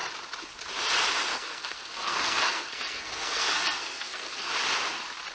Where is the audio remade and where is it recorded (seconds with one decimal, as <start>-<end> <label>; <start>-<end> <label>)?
0.0-1.3 recorded; 1.3-4.5 remade; 4.5-5.3 recorded